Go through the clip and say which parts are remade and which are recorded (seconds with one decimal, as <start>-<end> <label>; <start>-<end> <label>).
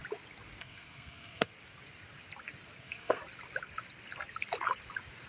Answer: 0.0-0.6 recorded; 0.6-1.5 remade; 1.5-2.8 recorded; 2.8-3.2 remade; 3.2-5.3 recorded